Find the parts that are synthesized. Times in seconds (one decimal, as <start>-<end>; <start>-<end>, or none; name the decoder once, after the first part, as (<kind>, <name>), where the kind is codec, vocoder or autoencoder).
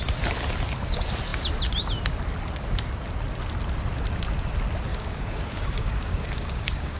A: 4.9-7.0 (codec, DAC)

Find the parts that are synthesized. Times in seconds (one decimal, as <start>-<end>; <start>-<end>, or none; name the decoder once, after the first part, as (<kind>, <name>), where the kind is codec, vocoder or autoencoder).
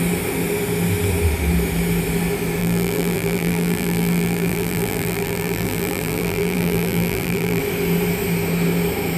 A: 2.6-7.6 (vocoder, BigVGAN v2)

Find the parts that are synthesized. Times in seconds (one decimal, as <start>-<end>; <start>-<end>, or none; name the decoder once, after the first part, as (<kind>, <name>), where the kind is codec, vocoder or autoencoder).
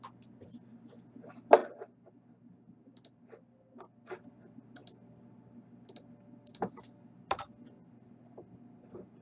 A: none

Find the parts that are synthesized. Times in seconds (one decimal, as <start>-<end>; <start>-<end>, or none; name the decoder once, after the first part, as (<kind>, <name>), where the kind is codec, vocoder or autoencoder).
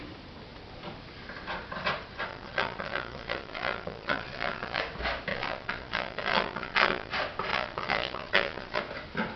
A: 2.3-4.8 (vocoder, Vocos); 5.3-7.1; 7.5-8.8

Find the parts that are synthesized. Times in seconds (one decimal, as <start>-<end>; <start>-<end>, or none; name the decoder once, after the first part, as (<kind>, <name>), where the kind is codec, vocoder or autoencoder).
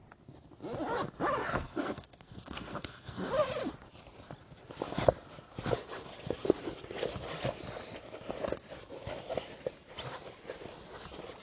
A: 1.4-3.3 (codec, SNAC)